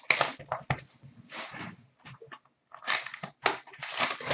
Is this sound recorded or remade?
recorded